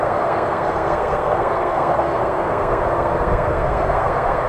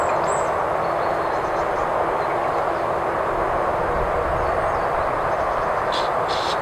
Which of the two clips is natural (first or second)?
second